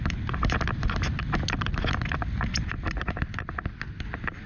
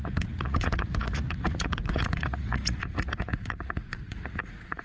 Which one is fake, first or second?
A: second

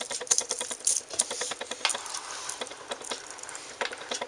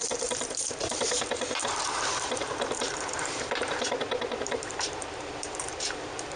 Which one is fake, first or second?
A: second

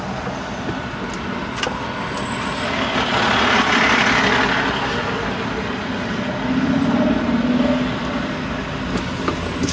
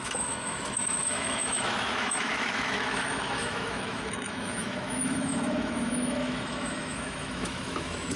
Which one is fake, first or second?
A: second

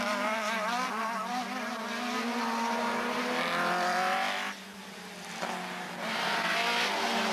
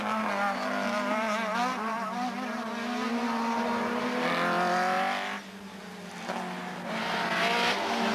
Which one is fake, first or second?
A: first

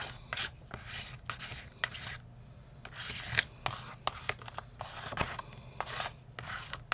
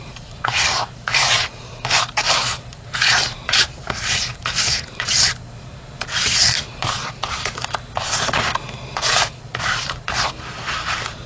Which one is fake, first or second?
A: second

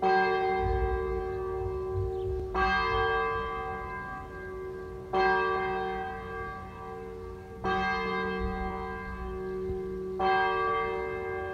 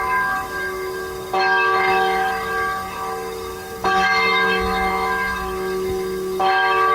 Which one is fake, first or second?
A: second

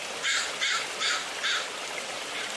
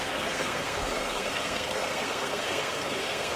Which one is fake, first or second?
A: second